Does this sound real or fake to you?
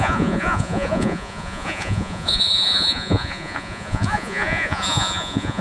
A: fake